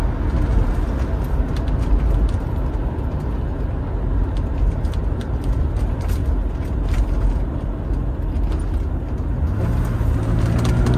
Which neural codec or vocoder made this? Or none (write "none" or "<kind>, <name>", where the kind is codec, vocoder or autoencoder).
none